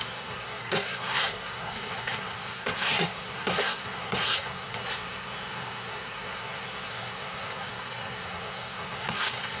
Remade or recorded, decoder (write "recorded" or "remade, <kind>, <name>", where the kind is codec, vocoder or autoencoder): remade, codec, SNAC